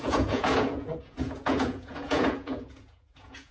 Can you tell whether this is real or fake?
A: fake